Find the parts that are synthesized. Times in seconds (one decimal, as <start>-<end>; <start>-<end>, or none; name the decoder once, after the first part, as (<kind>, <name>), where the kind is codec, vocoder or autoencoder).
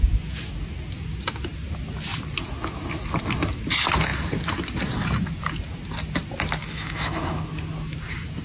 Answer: 6.6-7.5 (autoencoder, DAC-VAE)